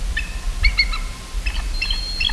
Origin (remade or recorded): recorded